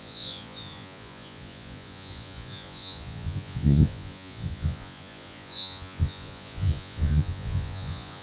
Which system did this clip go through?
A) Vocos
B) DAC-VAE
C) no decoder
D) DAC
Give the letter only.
A